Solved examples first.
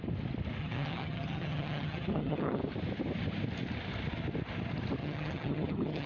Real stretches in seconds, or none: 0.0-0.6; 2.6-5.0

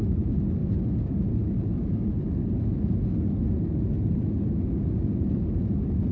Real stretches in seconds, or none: 0.0-6.1

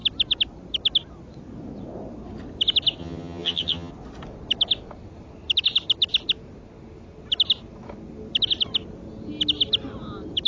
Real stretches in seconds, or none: 0.0-3.0; 3.9-10.5